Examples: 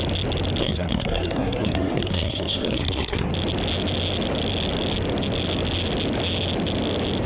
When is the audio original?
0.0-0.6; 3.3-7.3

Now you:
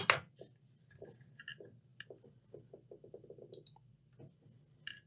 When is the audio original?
0.0-5.1

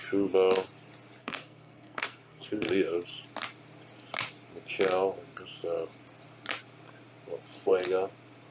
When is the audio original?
0.0-1.2; 2.7-8.5

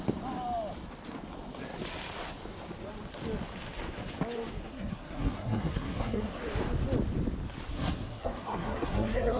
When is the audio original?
0.0-4.6; 6.4-7.7

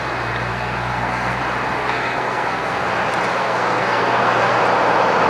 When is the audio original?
0.0-0.5; 1.4-1.8; 2.9-3.3; 4.6-5.3

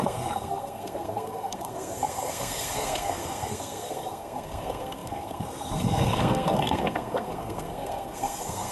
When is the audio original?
none

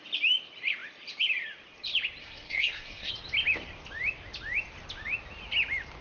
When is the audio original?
0.0-2.2; 3.1-6.0

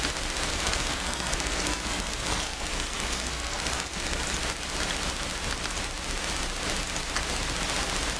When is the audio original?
0.0-0.5; 4.2-8.2